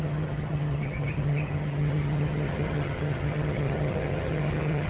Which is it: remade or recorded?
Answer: remade